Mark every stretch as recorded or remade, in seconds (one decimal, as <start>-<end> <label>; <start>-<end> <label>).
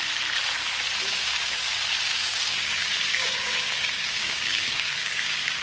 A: 0.0-1.1 recorded; 1.1-1.7 remade; 1.7-2.1 recorded; 2.1-5.6 remade